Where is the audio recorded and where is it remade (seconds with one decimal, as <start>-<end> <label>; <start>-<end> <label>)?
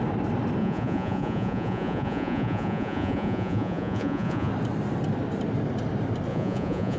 0.0-0.6 recorded; 0.6-4.5 remade; 4.5-6.3 recorded; 6.3-7.0 remade